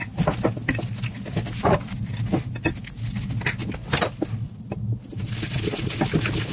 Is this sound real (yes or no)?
yes